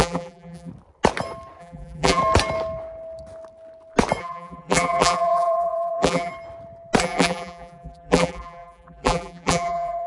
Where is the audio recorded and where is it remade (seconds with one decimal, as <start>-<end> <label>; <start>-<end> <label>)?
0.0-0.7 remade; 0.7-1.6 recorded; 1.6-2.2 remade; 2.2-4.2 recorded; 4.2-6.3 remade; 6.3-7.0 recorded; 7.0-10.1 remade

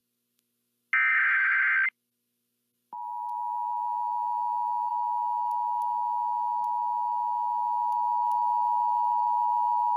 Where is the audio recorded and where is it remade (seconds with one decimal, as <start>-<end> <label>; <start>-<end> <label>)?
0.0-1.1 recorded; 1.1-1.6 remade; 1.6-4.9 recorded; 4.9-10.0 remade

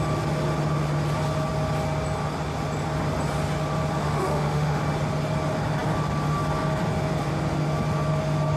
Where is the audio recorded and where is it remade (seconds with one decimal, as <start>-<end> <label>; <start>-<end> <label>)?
0.0-4.0 recorded; 4.0-4.8 remade; 4.8-8.6 recorded

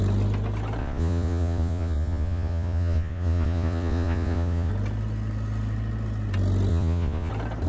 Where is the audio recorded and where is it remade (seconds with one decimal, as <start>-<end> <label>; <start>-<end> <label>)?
0.0-0.8 recorded; 0.8-4.7 remade; 4.7-6.7 recorded; 6.7-7.3 remade; 7.3-7.7 recorded